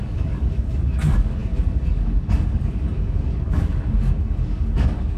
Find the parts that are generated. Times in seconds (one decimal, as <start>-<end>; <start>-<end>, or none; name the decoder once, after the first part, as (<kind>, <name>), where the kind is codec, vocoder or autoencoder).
0.0-5.2 (codec, DAC)